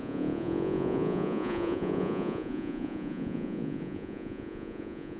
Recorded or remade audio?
remade